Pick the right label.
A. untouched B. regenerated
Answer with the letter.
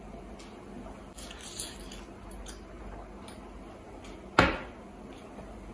A